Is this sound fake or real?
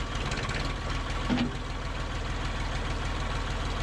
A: real